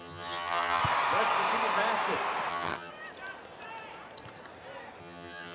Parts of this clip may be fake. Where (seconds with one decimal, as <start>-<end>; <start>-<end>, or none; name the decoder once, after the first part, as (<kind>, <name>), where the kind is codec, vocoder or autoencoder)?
0.0-0.8 (vocoder, HiFi-GAN); 2.5-2.9; 5.0-5.5